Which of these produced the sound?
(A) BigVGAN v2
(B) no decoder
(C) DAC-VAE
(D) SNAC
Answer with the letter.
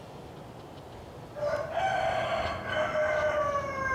B